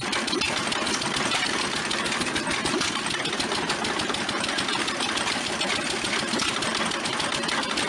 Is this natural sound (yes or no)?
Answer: yes